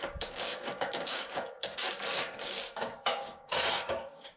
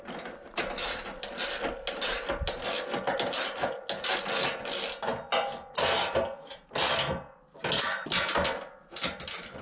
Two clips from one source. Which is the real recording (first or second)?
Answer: second